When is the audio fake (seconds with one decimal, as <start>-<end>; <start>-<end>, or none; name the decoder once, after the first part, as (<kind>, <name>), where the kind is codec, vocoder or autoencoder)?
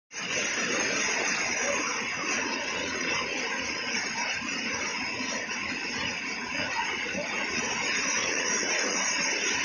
2.1-4.0 (vocoder, Vocos); 4.9-7.6; 8.2-9.0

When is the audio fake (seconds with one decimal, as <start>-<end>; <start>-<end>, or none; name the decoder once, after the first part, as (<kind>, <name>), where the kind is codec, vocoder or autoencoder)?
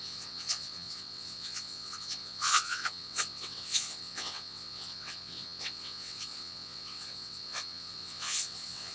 0.0-8.9 (vocoder, WaveNeXt)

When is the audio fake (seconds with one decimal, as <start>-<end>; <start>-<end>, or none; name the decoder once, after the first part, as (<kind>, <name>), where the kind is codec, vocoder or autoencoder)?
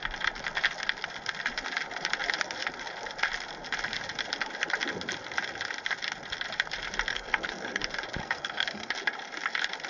7.1-7.8 (codec, SNAC); 8.2-8.9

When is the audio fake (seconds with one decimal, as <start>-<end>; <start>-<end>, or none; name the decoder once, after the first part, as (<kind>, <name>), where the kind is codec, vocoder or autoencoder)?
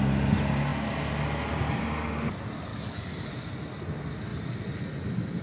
2.7-3.3 (codec, DAC)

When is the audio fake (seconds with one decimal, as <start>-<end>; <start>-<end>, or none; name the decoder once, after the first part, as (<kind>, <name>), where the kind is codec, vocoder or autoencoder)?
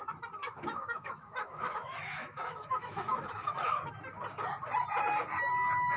0.4-4.0 (autoencoder, DAC-VAE)